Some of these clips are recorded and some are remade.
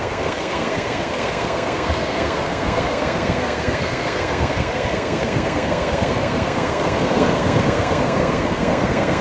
remade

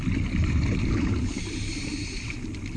recorded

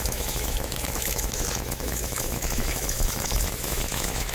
remade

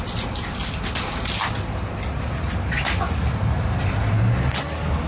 recorded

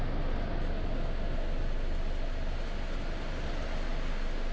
recorded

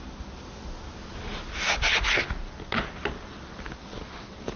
recorded